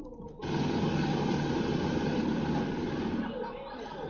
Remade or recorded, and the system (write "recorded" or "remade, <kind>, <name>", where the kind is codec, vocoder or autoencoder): recorded